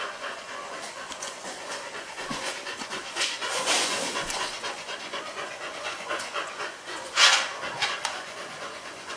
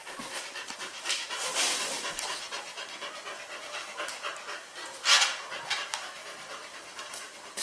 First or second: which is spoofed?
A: first